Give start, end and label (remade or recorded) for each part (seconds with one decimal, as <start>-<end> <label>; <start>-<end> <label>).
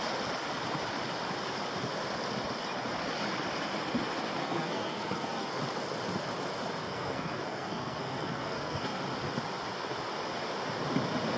0.0-4.4 recorded; 4.4-5.6 remade; 5.6-6.8 recorded; 6.8-9.0 remade; 9.0-11.4 recorded